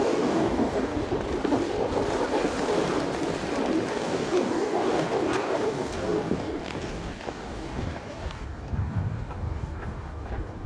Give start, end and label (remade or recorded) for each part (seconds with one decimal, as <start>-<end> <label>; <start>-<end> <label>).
0.0-0.9 remade; 0.9-3.9 recorded; 3.9-10.7 remade